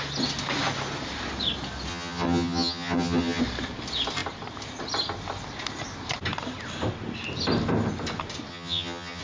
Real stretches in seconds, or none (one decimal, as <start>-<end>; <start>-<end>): 0.0-1.9; 3.4-8.5